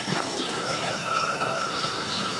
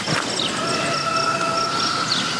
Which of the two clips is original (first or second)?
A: second